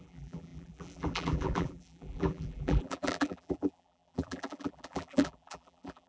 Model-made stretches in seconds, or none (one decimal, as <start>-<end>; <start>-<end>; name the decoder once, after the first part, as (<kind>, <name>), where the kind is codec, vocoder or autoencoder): 0.0-6.1 (vocoder, BigVGAN v2)